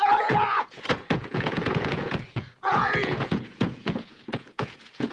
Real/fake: fake